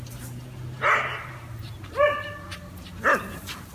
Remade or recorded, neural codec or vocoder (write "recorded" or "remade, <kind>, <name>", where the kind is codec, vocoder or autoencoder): recorded